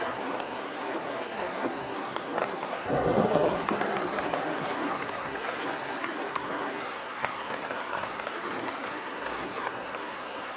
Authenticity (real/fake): fake